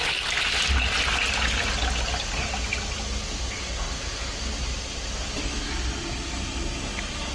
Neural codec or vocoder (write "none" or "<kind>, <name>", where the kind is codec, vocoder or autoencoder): none